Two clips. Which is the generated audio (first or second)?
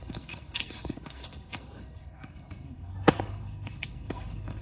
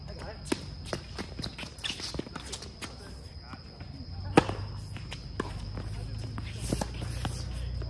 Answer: first